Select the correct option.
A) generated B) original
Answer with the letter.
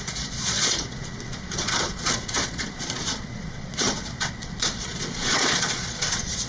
A